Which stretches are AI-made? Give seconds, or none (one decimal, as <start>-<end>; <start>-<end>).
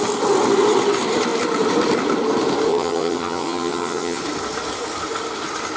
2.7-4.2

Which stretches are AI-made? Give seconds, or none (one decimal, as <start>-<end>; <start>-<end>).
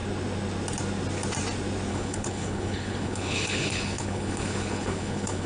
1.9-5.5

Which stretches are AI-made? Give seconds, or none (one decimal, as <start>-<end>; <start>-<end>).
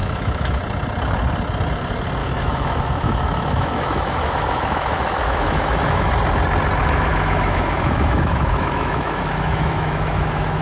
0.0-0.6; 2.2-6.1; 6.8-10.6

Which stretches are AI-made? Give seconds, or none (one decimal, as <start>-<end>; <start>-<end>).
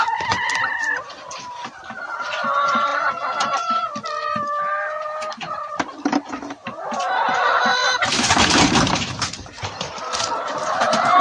7.8-10.0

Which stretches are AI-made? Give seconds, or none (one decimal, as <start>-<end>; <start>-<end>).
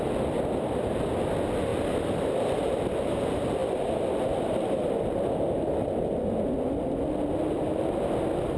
none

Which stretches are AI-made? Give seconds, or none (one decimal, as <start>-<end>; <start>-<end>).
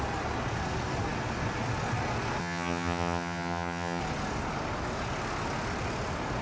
2.4-4.0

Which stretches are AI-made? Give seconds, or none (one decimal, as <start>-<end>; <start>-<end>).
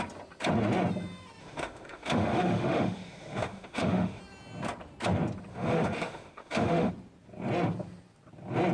1.4-4.2; 5.5-6.9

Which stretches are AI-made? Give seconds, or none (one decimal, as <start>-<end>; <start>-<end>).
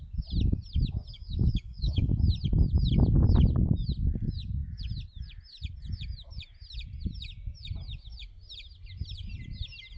1.1-2.1